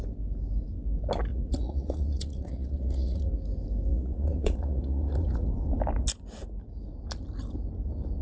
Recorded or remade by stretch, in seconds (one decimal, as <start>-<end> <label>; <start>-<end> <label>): 0.0-1.3 recorded; 1.3-3.3 remade; 3.3-3.9 recorded; 3.9-5.5 remade; 5.5-8.2 recorded